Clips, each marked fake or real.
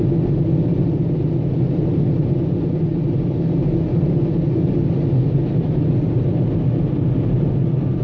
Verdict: real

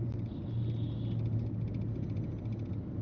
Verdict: real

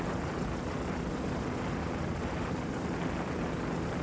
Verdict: real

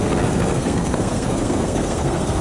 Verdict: fake